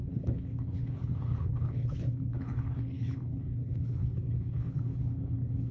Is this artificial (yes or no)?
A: yes